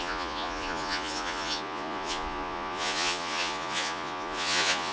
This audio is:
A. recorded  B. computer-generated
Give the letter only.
B